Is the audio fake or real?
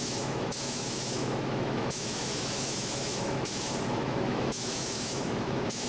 fake